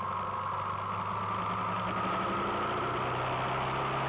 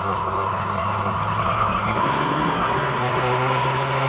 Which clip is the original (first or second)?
first